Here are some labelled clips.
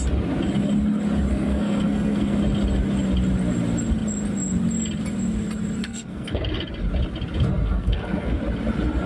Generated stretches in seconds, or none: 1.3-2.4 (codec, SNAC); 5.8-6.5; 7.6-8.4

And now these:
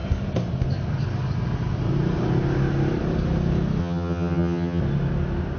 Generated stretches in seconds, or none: 3.8-4.8 (vocoder, HiFi-GAN)

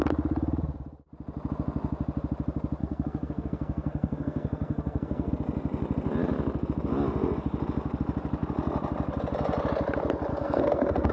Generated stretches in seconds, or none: 2.8-5.3 (codec, SNAC); 10.3-11.1

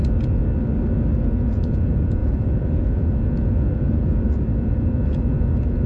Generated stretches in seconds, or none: 0.0-0.4 (vocoder, Vocos); 1.2-5.9